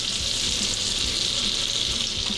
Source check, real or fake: real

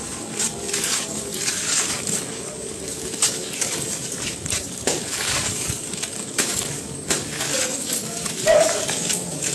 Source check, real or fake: fake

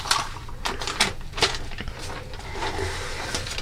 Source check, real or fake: real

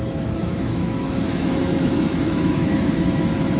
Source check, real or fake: fake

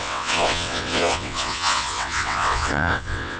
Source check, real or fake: fake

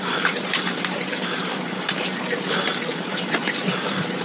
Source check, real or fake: fake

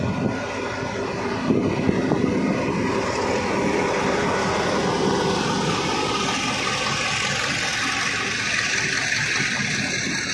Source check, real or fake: real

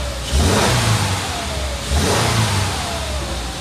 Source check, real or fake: real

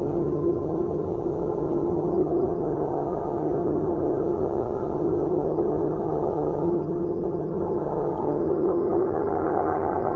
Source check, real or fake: fake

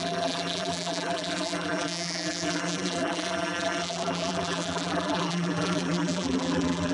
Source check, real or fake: fake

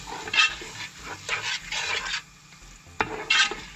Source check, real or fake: real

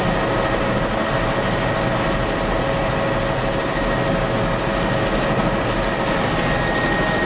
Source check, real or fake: real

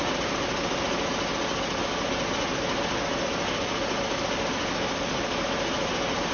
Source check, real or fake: real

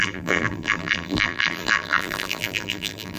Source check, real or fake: fake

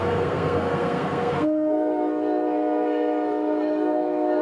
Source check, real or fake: fake